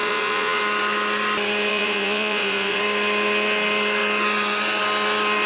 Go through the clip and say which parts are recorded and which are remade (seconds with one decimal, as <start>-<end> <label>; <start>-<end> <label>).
0.0-0.6 remade; 0.6-1.7 recorded; 1.7-2.8 remade; 2.8-5.5 recorded